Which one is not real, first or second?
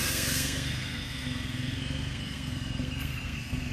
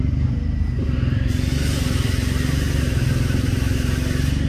first